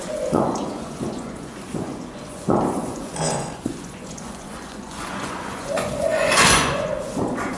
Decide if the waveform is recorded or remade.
remade